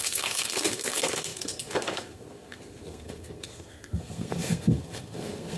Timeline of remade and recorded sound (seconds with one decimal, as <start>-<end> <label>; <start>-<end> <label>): 0.0-5.6 remade